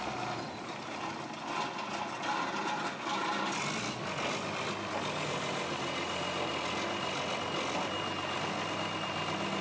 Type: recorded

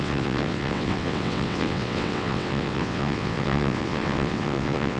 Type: remade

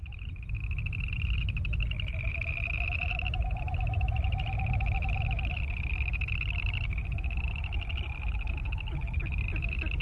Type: recorded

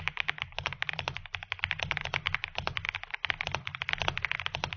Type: recorded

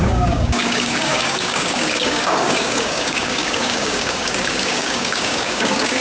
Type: remade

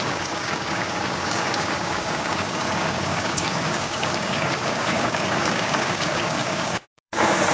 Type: remade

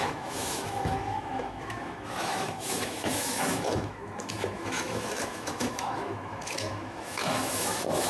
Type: remade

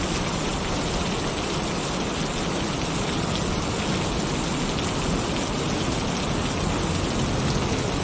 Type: recorded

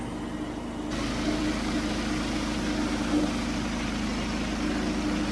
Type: recorded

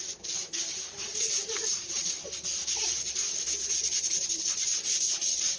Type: remade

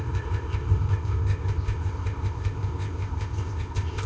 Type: remade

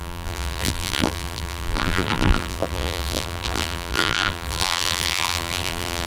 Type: remade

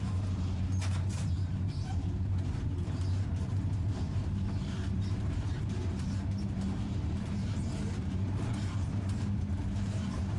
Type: remade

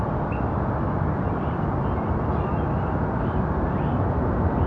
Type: recorded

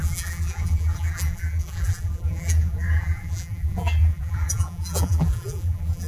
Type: remade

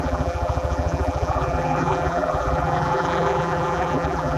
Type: remade